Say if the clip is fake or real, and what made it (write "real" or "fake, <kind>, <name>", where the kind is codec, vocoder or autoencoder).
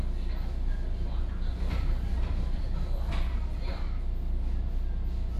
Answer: real